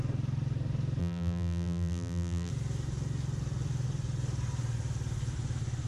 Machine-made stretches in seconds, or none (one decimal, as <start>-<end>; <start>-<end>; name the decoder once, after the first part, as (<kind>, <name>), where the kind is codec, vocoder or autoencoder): 1.0-2.5 (vocoder, BigVGAN v2)